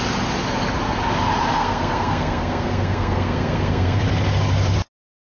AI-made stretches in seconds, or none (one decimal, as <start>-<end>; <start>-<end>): 1.5-4.0